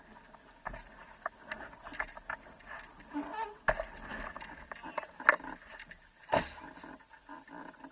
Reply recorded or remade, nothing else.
recorded